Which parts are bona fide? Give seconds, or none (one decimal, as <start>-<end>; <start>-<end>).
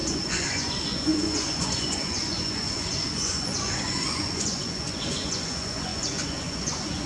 none